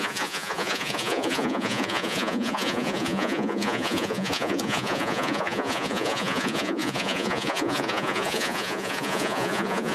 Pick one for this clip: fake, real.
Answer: fake